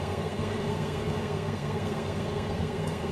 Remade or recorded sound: remade